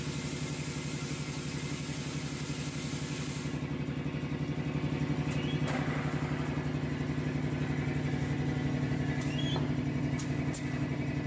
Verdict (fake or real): real